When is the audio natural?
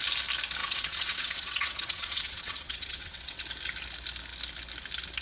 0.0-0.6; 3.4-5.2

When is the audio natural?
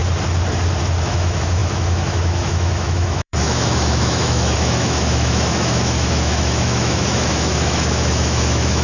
0.0-1.0